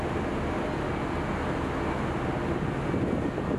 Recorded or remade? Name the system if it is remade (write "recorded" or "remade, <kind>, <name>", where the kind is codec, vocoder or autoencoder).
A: recorded